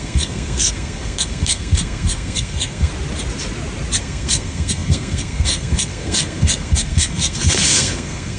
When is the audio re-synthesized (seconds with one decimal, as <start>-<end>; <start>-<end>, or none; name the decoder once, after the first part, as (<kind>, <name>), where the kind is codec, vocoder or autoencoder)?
0.0-2.9 (codec, SNAC); 4.0-8.4